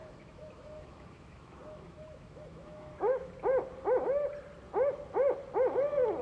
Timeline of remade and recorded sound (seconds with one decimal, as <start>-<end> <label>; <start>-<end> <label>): 0.0-3.3 remade; 3.3-6.2 recorded